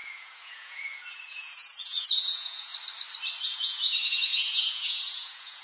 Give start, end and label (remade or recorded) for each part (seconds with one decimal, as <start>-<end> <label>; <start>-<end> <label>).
0.0-2.7 remade; 2.7-3.4 recorded; 3.4-5.6 remade